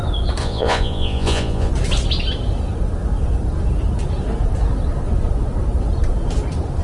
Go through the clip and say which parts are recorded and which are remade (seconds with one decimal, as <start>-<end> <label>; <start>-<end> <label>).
0.0-0.4 recorded; 0.4-1.7 remade; 1.7-6.8 recorded